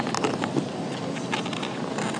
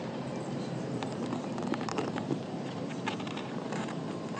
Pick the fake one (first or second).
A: second